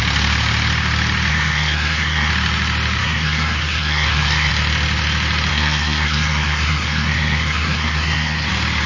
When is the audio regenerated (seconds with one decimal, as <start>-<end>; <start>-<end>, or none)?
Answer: 1.3-2.3; 3.0-4.5; 5.5-8.5